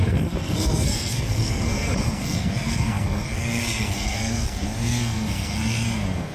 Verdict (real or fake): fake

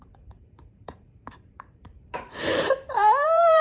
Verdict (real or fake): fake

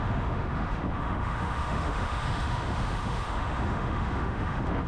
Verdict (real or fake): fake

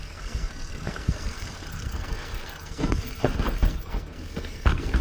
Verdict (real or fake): fake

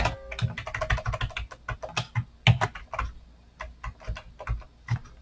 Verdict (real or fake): real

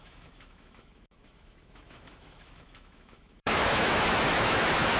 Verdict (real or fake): fake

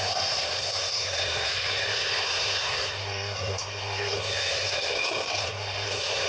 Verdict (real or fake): fake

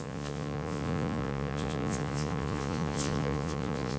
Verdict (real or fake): fake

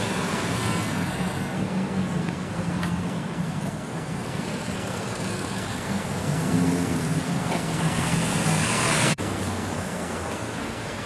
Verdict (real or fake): fake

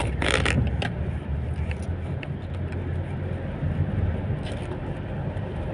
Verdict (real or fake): real